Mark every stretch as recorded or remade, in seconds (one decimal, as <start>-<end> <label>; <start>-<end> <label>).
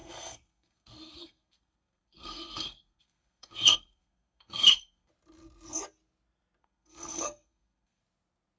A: 0.0-5.1 remade; 5.1-6.6 recorded; 6.6-8.0 remade; 8.0-8.6 recorded